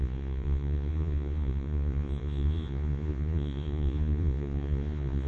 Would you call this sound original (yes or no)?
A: no